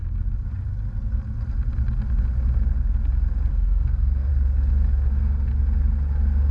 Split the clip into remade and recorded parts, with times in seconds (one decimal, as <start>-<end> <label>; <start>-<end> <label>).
0.0-3.5 recorded; 3.5-4.3 remade; 4.3-5.1 recorded; 5.1-5.5 remade; 5.5-6.5 recorded